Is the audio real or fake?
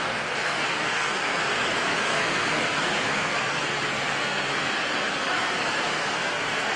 fake